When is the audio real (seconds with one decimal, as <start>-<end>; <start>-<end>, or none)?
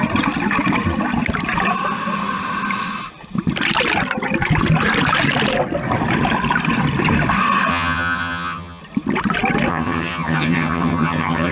0.0-7.7; 8.8-9.7